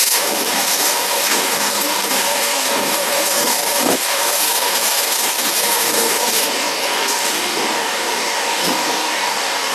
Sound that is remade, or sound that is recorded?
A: remade